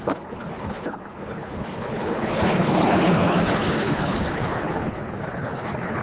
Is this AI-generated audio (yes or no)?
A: yes